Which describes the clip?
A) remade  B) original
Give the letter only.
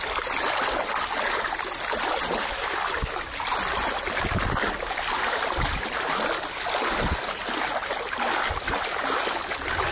B